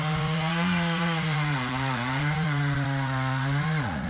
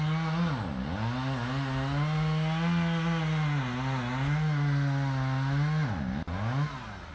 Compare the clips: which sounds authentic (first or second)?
second